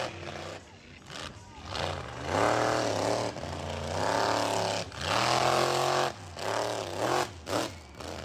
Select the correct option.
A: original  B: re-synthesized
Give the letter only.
A